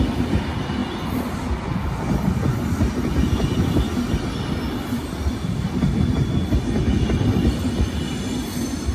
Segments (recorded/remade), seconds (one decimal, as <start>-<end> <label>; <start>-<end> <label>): 0.0-8.9 recorded